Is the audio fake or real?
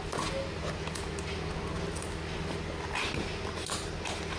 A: real